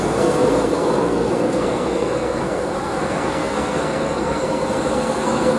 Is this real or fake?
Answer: fake